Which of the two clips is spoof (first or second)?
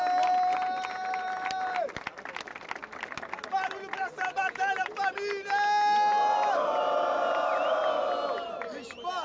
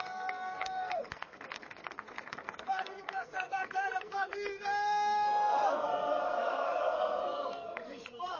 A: second